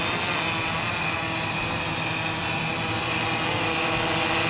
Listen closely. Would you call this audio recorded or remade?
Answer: recorded